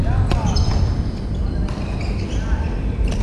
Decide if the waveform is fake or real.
real